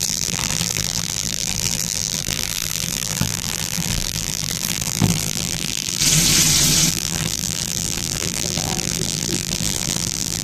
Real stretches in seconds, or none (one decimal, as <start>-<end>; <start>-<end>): 6.0-6.9